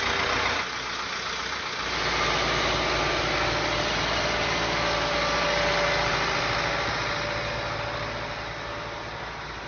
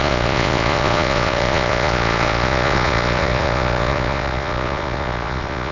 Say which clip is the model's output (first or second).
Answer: second